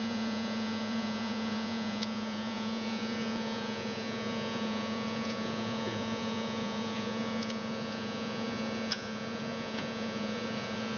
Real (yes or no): no